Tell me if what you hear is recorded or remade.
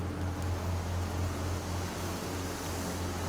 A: recorded